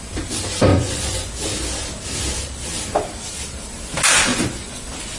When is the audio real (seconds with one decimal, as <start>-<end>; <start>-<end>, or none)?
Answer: 0.0-0.7; 1.3-4.3; 4.8-5.2